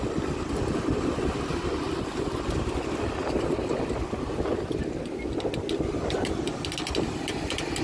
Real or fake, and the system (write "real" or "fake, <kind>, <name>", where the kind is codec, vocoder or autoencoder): real